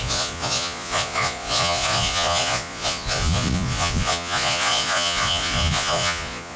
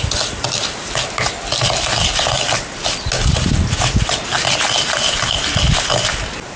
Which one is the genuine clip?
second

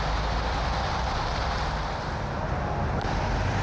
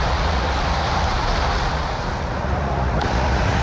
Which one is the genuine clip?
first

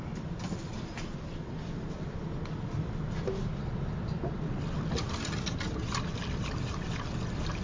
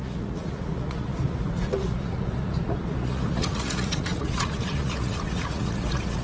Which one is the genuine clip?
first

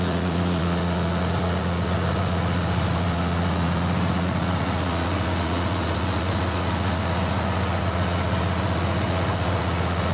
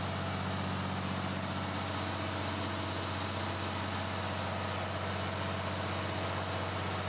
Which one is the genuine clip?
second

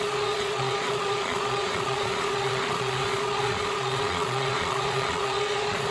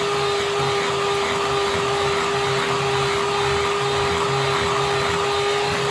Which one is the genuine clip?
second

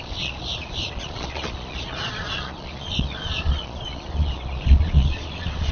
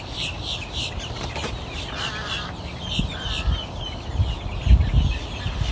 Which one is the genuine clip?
second